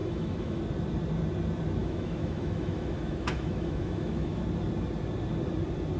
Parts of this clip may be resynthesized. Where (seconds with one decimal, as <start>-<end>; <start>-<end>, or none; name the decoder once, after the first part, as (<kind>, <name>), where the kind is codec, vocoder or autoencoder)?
0.0-0.6 (autoencoder, DAC-VAE); 1.8-4.4